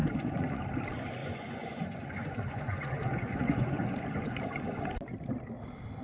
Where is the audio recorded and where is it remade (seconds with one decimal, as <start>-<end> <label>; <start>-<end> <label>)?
0.0-0.6 remade; 0.6-1.2 recorded; 1.2-4.8 remade; 4.8-6.0 recorded